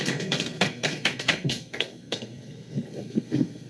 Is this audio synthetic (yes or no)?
yes